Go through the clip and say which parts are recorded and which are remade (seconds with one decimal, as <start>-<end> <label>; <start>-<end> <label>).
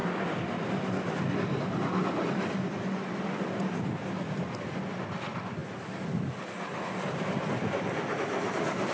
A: 0.0-8.9 recorded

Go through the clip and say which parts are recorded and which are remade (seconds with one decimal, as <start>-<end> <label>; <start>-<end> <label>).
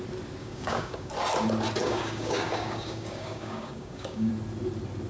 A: 0.0-0.4 recorded; 0.4-1.1 remade; 1.1-1.8 recorded; 1.8-4.3 remade; 4.3-5.1 recorded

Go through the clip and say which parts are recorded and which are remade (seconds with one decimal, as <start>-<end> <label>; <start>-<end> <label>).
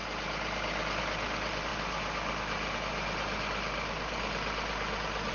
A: 0.0-5.3 recorded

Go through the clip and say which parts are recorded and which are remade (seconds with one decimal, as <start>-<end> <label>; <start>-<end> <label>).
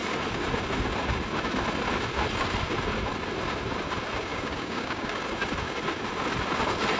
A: 0.0-4.3 recorded; 4.3-5.2 remade; 5.2-7.0 recorded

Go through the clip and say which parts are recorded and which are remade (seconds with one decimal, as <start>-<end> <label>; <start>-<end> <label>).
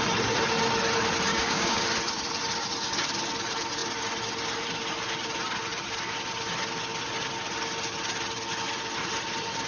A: 0.0-1.3 recorded; 1.3-1.8 remade; 1.8-9.7 recorded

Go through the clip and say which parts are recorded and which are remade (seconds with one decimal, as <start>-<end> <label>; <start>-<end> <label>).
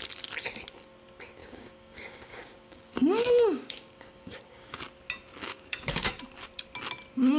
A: 0.0-1.4 recorded; 1.4-4.8 remade; 4.8-5.4 recorded; 5.4-6.1 remade; 6.1-7.4 recorded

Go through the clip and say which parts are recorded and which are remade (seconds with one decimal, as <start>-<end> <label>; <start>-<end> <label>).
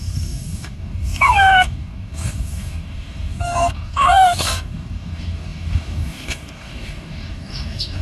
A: 0.0-8.0 remade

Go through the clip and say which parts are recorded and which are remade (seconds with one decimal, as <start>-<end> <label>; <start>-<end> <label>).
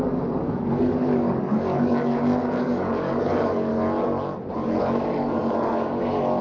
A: 0.0-3.7 remade; 3.7-4.8 recorded; 4.8-6.4 remade